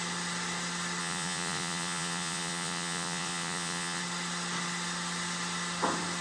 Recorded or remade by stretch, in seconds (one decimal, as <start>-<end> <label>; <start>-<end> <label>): 0.0-1.0 recorded; 1.0-4.0 remade; 4.0-6.2 recorded